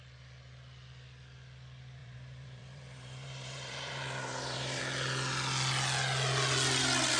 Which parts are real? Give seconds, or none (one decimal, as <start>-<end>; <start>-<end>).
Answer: 0.0-2.0; 4.8-7.2